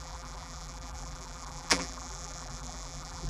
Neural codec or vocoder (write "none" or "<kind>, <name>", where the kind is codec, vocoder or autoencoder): vocoder, BigVGAN v2